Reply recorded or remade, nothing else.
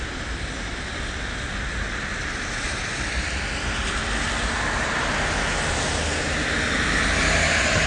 recorded